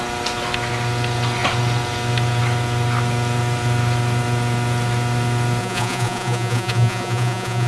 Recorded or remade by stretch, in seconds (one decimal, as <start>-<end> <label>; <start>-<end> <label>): 0.0-5.6 recorded; 5.6-7.7 remade